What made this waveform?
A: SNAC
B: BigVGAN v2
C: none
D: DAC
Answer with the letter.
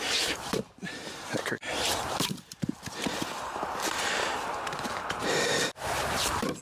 B